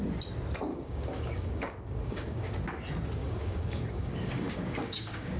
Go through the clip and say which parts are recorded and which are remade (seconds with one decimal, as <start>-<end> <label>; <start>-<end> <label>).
0.0-0.7 recorded; 0.7-2.5 remade; 2.5-3.2 recorded; 3.2-5.4 remade